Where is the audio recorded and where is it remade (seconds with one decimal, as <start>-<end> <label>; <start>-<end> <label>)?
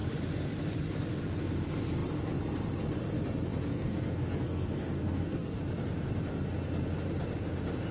0.0-3.7 recorded; 3.7-5.6 remade; 5.6-7.9 recorded